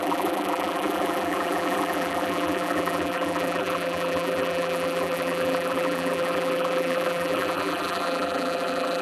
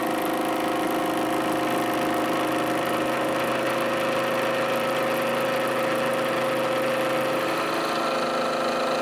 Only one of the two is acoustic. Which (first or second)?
second